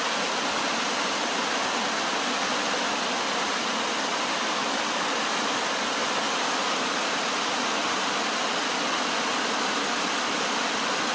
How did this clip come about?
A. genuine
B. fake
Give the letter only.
A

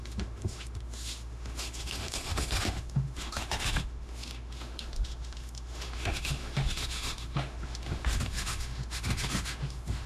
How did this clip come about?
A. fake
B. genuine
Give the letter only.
A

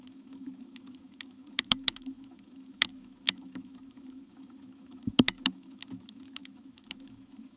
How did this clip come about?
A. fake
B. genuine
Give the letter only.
A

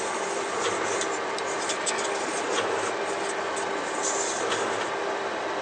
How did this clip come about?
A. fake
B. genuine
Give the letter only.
B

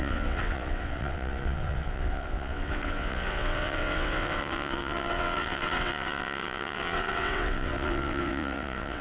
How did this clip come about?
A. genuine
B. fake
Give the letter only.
B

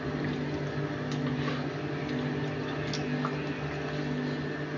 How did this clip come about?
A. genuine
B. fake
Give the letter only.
A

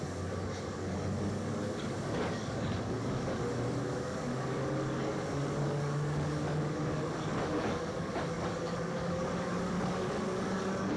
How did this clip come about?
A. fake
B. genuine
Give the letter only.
A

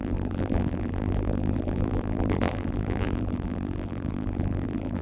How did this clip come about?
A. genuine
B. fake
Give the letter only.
B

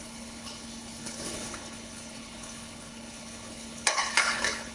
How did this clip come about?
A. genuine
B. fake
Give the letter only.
B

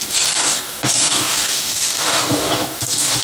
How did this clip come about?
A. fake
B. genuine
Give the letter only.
A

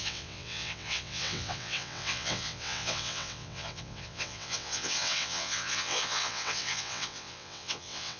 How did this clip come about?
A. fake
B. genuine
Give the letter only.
A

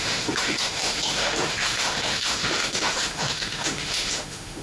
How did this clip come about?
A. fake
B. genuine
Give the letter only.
A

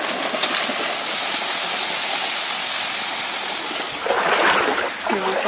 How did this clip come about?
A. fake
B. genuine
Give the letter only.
B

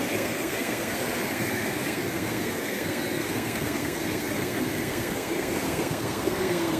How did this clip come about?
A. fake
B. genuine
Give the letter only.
A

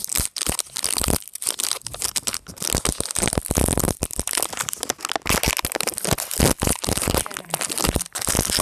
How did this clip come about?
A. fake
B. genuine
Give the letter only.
B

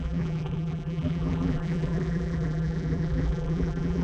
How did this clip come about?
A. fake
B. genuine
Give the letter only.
A